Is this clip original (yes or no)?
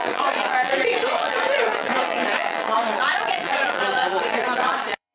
no